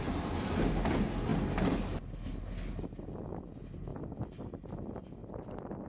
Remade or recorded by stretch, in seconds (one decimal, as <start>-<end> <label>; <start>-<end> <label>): 0.0-5.9 recorded